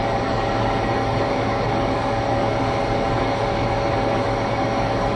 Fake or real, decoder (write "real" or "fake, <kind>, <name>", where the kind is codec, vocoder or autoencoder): fake, codec, DAC